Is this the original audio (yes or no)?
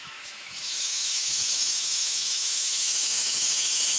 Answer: no